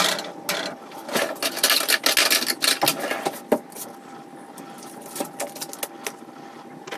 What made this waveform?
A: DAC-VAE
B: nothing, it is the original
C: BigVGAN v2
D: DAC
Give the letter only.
B